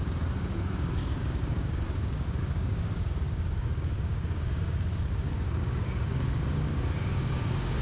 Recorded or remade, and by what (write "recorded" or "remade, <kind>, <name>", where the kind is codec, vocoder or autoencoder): remade, codec, DAC